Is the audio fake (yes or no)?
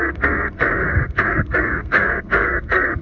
yes